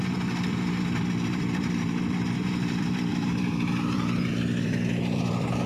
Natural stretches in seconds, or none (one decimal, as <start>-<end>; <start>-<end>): none